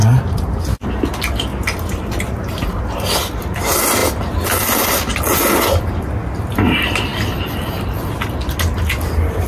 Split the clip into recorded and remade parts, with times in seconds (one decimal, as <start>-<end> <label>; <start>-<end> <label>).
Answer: 0.0-0.6 remade; 0.6-1.5 recorded; 1.5-2.8 remade; 2.8-9.5 recorded